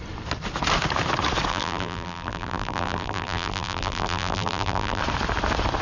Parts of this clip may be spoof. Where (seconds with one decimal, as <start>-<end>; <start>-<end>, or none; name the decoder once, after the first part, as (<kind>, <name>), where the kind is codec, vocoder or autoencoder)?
1.5-5.0 (vocoder, BigVGAN v2)